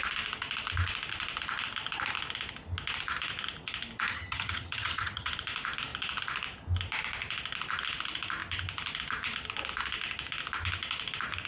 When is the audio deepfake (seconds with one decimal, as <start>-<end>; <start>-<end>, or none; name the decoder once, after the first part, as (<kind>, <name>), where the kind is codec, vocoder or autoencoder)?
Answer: 4.1-5.3 (vocoder, HiFi-GAN)